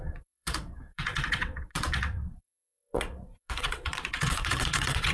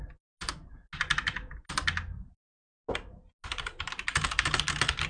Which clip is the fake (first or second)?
first